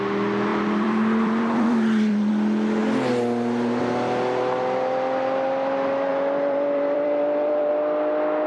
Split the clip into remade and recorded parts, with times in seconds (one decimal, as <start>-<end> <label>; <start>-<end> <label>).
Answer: 0.0-0.5 recorded; 0.5-2.3 remade; 2.3-6.1 recorded; 6.1-7.7 remade; 7.7-8.5 recorded